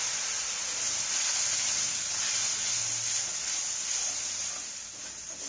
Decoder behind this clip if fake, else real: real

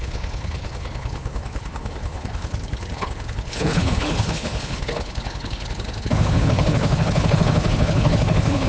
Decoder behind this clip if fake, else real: fake, codec, HILCodec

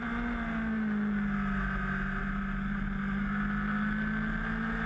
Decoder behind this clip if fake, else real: real